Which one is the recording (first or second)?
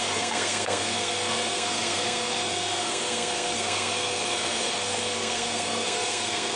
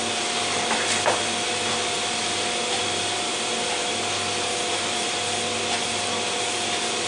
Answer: second